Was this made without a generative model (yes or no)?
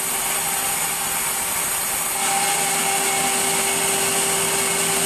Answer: yes